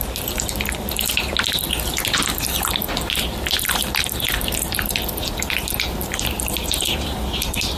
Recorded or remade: recorded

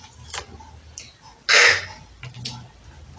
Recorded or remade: recorded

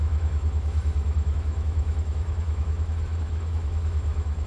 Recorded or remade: remade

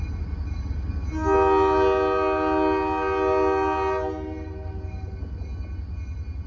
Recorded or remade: recorded